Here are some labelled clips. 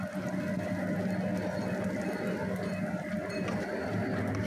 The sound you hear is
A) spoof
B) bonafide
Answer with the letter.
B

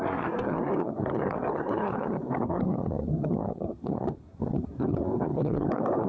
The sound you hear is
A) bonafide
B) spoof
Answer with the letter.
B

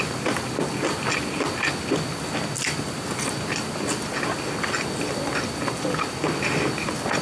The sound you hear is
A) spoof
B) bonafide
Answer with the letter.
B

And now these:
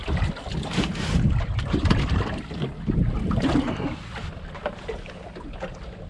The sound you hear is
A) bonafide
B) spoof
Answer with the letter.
A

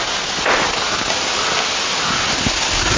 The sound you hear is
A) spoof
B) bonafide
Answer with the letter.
B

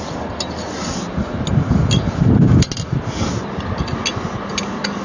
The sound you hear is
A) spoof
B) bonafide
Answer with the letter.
B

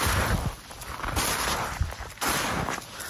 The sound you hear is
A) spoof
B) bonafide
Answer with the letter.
B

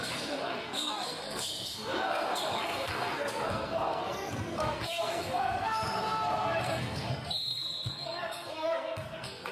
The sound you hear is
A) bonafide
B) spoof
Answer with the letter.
B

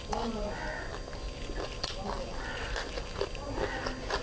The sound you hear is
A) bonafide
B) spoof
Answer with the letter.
A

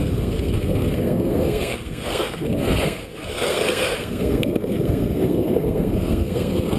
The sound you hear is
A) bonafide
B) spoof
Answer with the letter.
B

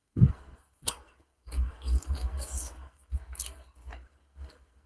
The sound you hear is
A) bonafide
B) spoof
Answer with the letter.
B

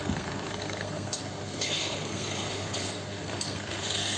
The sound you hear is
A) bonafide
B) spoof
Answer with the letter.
B